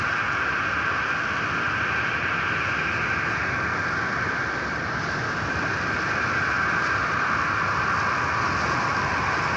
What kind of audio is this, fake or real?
real